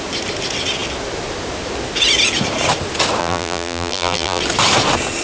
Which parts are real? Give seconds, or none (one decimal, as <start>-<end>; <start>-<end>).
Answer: 0.0-3.2; 4.4-5.2